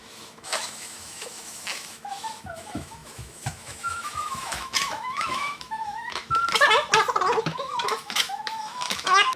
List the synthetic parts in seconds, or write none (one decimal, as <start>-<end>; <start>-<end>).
0.0-6.4; 7.4-9.4